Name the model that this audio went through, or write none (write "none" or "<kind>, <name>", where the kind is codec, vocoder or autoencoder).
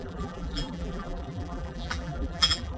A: vocoder, BigVGAN v2